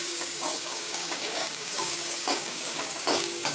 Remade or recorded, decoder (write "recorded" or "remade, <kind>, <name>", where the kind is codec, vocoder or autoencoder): remade, codec, DAC